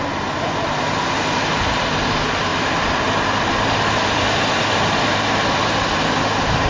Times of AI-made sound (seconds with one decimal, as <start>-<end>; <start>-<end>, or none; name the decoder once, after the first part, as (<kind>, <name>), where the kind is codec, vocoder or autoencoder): 2.5-5.8 (vocoder, BigVGAN v2)